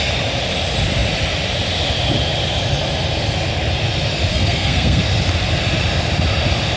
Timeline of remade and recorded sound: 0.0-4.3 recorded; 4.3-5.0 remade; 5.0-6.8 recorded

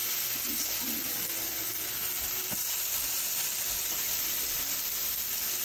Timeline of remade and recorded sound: 0.0-5.6 recorded

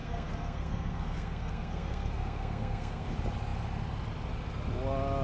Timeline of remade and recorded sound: 0.0-3.1 remade; 3.1-5.2 recorded

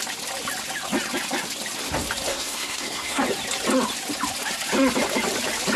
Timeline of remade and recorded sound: 0.0-2.3 recorded; 2.3-3.2 remade; 3.2-5.8 recorded